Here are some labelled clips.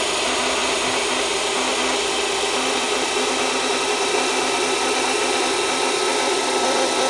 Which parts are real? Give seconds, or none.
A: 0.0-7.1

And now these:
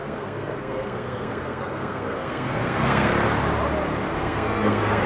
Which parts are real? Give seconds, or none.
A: 3.1-4.1

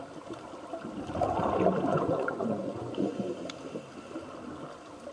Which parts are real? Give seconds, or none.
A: 0.0-1.9; 3.2-5.1

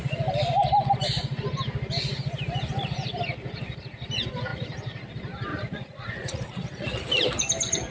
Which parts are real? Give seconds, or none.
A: 0.0-5.5; 7.0-7.9